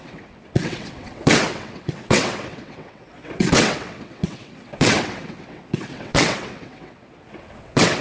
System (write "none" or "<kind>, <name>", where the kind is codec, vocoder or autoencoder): vocoder, WaveNeXt